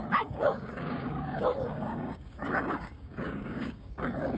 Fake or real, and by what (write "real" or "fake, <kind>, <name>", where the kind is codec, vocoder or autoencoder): fake, codec, DAC